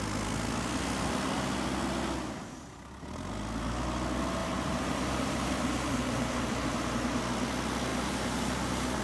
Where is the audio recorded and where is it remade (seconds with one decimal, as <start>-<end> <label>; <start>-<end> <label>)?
0.0-4.4 recorded; 4.4-7.2 remade; 7.2-7.9 recorded; 7.9-9.0 remade